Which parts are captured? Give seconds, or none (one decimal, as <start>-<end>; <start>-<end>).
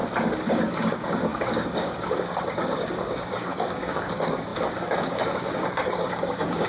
0.0-0.5